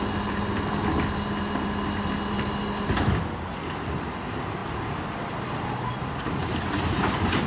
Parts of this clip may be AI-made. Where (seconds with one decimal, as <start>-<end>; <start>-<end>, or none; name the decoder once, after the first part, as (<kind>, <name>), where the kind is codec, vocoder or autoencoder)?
4.6-5.9 (vocoder, BigVGAN v2)